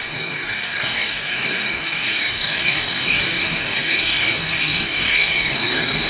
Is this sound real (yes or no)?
no